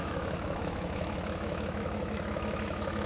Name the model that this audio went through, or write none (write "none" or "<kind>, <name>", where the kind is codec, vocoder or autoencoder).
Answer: autoencoder, DAC-VAE